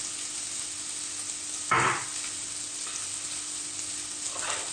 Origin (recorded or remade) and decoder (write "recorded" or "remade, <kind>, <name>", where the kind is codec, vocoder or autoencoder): recorded